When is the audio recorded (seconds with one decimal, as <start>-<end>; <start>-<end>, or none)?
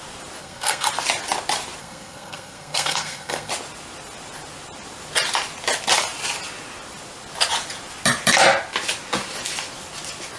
0.0-0.4; 0.9-1.8; 3.5-10.4